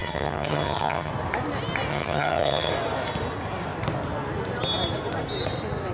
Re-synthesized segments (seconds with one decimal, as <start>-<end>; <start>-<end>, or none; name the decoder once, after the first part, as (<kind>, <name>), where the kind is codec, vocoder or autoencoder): 0.0-1.1 (vocoder, HiFi-GAN); 1.9-2.7